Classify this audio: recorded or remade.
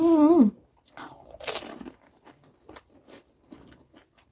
recorded